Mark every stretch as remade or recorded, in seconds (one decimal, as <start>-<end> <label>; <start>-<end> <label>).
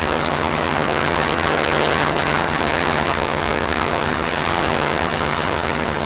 0.0-6.1 remade